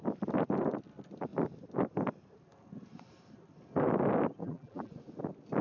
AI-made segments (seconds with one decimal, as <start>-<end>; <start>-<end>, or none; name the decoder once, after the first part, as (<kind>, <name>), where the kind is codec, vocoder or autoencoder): 4.4-4.9 (vocoder, BigVGAN v2)